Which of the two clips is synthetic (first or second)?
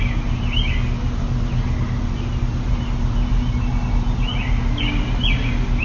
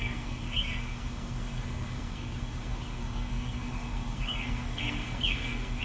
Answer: second